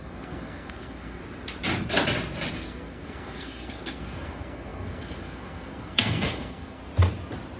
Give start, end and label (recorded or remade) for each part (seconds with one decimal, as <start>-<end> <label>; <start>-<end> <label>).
0.0-1.2 remade; 1.2-2.5 recorded; 2.5-6.8 remade; 6.8-7.6 recorded